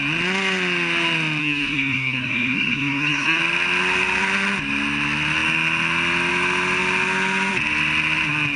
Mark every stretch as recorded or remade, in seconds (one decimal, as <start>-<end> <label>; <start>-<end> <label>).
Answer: 0.0-1.4 recorded; 1.4-3.4 remade; 3.4-8.6 recorded